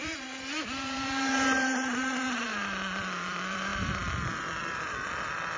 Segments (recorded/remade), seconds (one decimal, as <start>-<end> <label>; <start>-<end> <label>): 0.0-5.6 remade